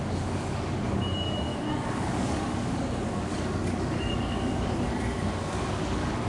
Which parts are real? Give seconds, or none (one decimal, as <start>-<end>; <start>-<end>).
none